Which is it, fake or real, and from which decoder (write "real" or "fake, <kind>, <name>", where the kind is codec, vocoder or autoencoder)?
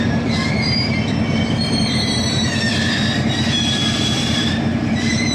fake, vocoder, BigVGAN v2